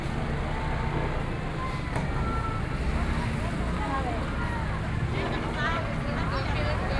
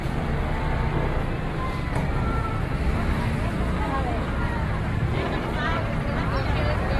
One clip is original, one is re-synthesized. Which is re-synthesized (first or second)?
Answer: second